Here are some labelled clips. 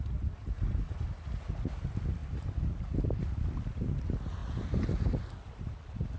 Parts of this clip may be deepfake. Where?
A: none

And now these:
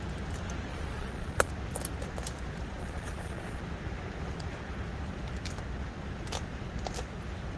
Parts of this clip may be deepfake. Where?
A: 0.7-1.5 (vocoder, Vocos); 2.8-3.6

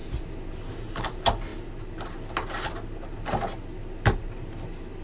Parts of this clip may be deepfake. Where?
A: none

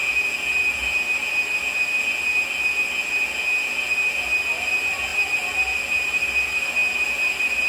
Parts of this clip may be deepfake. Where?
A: 4.6-7.7 (vocoder, BigVGAN v2)

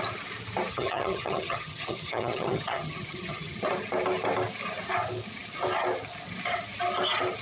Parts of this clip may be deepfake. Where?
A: 0.7-3.6 (vocoder, HiFi-GAN)

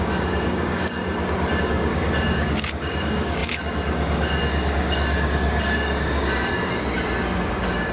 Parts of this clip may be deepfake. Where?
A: 0.0-1.0 (codec, DAC); 1.6-7.9

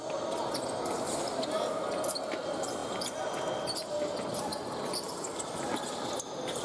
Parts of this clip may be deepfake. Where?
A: none

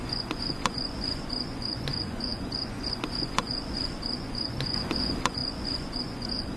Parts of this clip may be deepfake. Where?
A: 0.0-6.6 (vocoder, Vocos)